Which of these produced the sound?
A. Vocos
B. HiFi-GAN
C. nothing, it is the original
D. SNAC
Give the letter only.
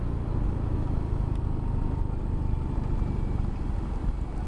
C